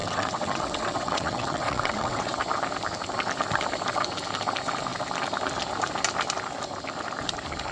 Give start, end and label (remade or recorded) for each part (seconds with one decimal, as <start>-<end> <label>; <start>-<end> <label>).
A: 0.0-2.4 remade; 2.4-7.7 recorded